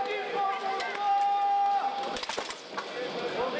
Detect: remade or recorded recorded